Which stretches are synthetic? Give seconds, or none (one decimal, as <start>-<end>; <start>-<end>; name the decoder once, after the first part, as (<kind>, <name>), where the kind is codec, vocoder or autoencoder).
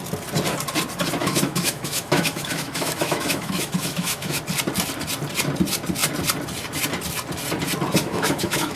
1.2-4.4 (autoencoder, DAC-VAE); 8.0-8.8